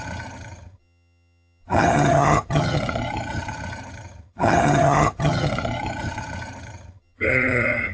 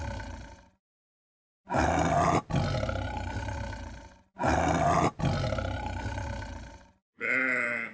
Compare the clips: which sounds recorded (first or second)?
second